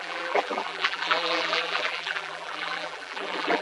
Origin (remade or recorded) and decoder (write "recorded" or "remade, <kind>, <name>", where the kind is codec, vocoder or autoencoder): remade, vocoder, BigVGAN v2